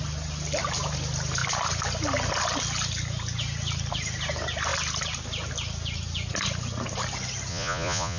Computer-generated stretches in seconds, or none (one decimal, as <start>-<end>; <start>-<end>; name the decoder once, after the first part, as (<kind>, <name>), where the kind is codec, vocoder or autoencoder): 7.5-8.2 (vocoder, Vocos)

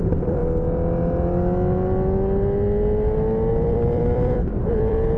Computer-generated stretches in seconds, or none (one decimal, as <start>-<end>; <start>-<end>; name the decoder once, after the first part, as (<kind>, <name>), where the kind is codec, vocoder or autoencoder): 0.0-0.4 (vocoder, BigVGAN v2); 3.5-5.2

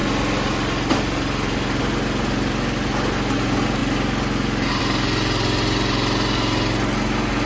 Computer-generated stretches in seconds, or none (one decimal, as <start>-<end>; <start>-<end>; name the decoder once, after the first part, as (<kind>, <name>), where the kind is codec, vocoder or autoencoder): 0.0-1.8 (vocoder, BigVGAN v2)

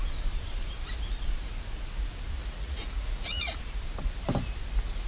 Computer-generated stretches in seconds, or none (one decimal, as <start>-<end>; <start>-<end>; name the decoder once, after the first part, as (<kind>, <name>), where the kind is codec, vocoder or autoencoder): 2.4-3.6 (vocoder, Vocos)

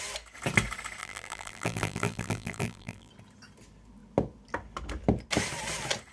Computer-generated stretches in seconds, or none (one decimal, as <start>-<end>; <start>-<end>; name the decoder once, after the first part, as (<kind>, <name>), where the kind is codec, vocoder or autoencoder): 1.0-3.1 (vocoder, BigVGAN v2)

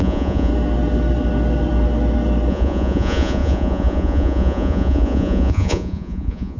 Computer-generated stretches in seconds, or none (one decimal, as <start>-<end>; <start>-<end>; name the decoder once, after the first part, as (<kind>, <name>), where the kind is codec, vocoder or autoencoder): 0.0-0.5 (vocoder, Vocos); 2.5-6.6